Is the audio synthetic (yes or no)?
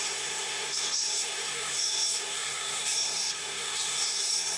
yes